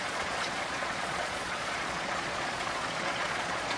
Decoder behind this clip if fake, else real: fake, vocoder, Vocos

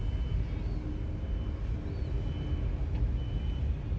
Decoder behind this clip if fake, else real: real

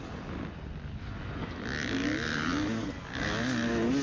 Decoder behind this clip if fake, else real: real